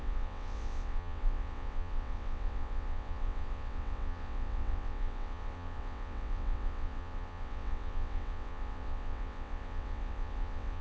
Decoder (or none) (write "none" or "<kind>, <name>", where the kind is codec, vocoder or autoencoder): vocoder, WaveNeXt